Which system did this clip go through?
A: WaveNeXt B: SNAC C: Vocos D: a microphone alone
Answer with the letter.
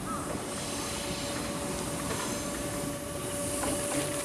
D